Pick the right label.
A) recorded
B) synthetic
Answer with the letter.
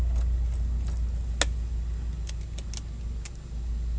A